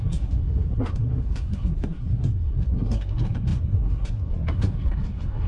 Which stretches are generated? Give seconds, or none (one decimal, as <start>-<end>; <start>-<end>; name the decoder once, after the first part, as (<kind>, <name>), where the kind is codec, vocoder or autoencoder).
0.0-5.5 (codec, SNAC)